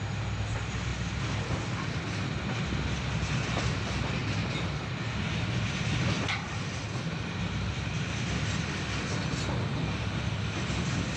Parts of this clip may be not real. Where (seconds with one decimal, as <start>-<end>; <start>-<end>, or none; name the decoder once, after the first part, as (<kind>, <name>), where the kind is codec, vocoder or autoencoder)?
none